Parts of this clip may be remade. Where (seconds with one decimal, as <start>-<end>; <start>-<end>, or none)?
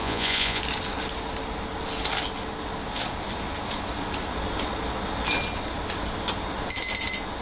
0.0-0.6